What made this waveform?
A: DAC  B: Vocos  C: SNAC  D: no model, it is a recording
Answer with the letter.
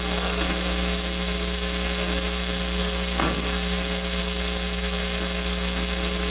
C